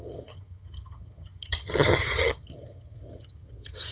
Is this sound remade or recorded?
remade